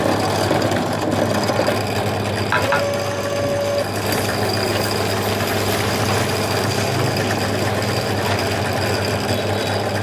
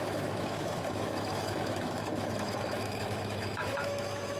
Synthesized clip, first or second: second